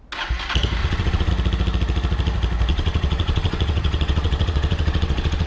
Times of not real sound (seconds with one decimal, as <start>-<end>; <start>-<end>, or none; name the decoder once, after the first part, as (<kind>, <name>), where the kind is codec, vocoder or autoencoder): 0.8-1.3 (vocoder, WaveNeXt); 2.7-5.5